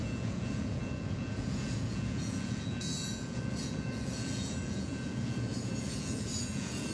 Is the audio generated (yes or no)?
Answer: yes